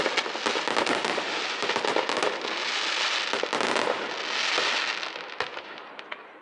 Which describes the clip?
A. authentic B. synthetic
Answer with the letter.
A